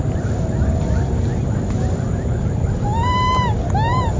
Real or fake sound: real